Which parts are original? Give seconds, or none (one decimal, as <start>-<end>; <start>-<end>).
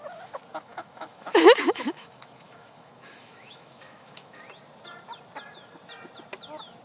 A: 0.0-0.5; 4.4-6.8